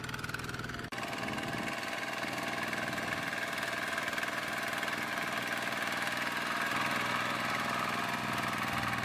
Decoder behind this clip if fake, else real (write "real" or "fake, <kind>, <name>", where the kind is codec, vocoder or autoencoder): real